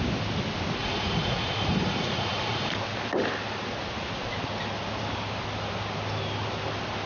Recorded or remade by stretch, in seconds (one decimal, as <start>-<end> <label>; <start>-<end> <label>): 0.0-0.8 recorded; 0.8-2.7 remade; 2.7-7.1 recorded